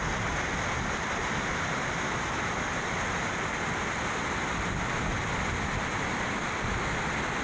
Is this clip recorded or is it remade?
recorded